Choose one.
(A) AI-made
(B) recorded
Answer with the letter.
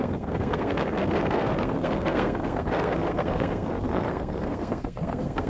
A